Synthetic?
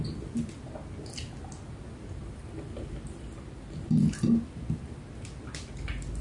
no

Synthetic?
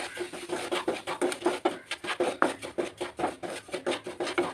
no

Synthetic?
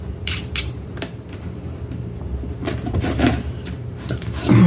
yes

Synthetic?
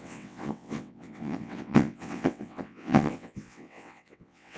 yes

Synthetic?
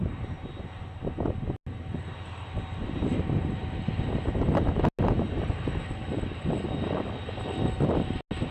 no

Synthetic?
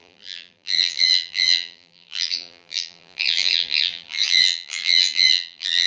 yes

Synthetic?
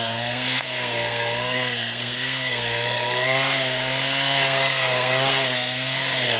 yes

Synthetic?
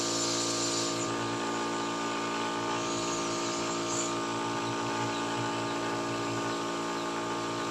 no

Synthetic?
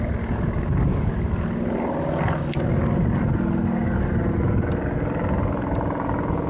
no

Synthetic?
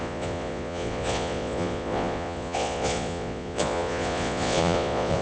yes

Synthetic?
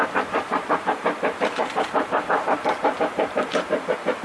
yes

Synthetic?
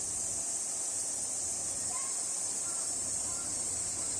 no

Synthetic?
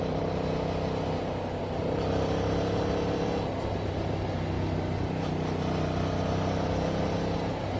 no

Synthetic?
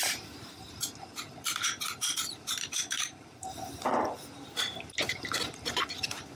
yes